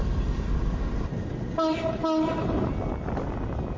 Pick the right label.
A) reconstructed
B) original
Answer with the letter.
B